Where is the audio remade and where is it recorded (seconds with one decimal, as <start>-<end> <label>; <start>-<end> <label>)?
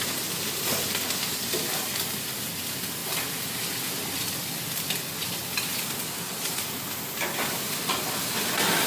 0.0-8.9 recorded